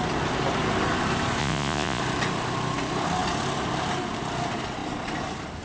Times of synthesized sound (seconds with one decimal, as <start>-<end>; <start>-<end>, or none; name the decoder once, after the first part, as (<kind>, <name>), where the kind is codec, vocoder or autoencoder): 1.4-2.0 (vocoder, Vocos)